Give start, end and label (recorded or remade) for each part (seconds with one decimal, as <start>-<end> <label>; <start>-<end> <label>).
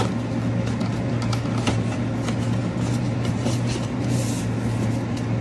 0.0-0.9 recorded; 0.9-2.0 remade; 2.0-2.6 recorded; 2.6-4.2 remade; 4.2-5.4 recorded